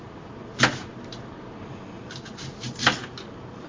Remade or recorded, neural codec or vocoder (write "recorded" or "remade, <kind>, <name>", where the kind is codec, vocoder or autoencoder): recorded